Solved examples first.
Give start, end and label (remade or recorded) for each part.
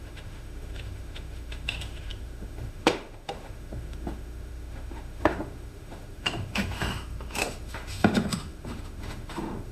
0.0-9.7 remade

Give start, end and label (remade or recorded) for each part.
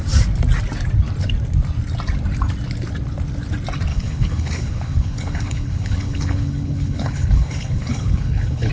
0.0-3.9 recorded; 3.9-8.7 remade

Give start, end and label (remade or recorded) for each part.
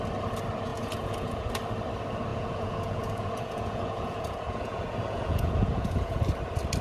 0.0-0.7 recorded; 0.7-1.5 remade; 1.5-2.3 recorded; 2.3-6.2 remade; 6.2-6.8 recorded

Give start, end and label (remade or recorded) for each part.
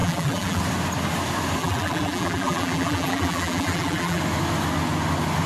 0.0-0.6 remade; 0.6-1.6 recorded; 1.6-4.2 remade; 4.2-5.5 recorded